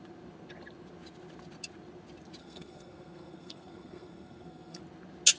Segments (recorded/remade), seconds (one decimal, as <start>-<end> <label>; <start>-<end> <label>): 0.0-2.4 recorded; 2.4-4.8 remade; 4.8-5.4 recorded